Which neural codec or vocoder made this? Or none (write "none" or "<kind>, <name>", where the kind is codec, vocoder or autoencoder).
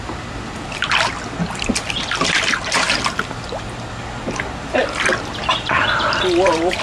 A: none